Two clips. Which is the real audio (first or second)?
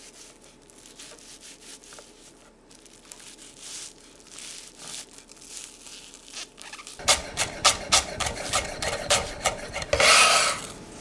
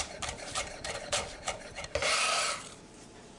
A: first